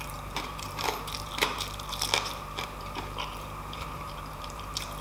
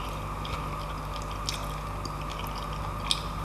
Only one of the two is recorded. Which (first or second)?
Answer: second